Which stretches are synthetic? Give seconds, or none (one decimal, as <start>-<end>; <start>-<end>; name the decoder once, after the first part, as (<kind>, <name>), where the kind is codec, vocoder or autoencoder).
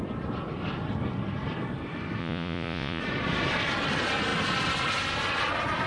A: 2.2-3.0 (vocoder, Vocos)